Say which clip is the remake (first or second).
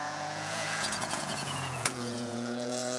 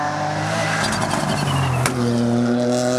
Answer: first